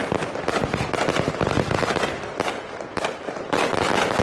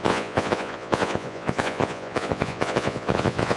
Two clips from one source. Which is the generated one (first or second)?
second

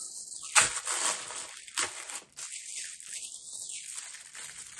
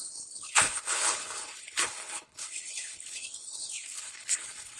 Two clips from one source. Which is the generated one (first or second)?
second